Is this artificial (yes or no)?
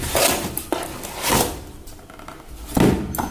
no